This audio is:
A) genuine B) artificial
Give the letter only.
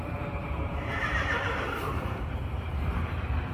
B